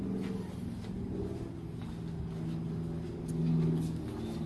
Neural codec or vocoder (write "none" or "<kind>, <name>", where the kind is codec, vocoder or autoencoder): none